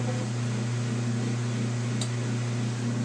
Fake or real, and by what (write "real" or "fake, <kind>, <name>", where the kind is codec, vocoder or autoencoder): real